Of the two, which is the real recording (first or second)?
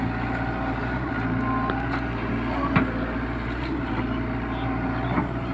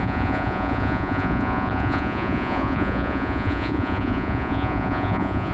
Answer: first